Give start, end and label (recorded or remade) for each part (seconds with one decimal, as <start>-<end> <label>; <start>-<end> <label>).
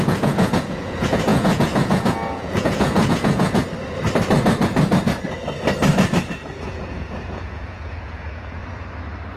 0.0-3.6 remade; 3.6-6.5 recorded; 6.5-8.6 remade; 8.6-9.4 recorded